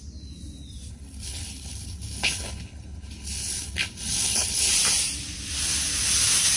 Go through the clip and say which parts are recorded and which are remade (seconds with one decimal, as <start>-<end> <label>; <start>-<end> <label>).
0.0-0.9 recorded; 0.9-4.7 remade; 4.7-6.6 recorded